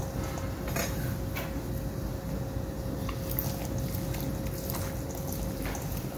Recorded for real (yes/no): yes